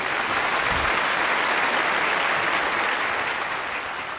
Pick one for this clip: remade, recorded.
recorded